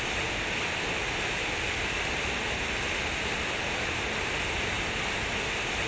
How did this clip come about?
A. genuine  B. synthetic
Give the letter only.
A